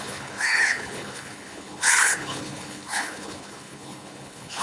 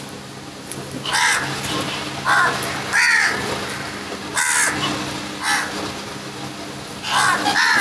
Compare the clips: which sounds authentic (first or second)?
second